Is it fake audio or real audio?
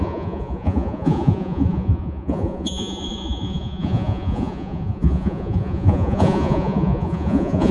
fake